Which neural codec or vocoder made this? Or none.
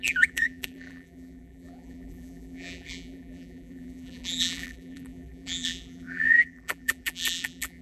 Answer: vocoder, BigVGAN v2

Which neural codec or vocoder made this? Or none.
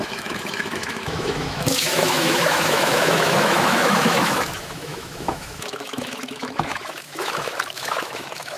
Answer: autoencoder, DAC-VAE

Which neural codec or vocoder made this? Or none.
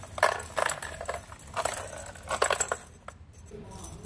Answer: none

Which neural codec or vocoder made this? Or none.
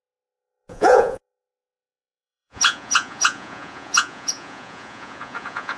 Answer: vocoder, Vocos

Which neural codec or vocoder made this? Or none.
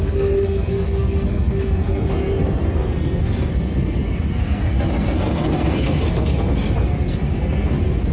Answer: codec, SNAC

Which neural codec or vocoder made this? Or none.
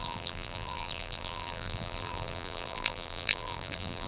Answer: vocoder, BigVGAN v2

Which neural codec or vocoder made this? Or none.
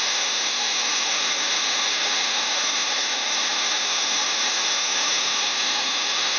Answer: autoencoder, DAC-VAE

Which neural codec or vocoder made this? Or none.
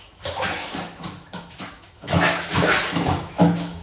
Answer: autoencoder, DAC-VAE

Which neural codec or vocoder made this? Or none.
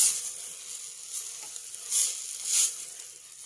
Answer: none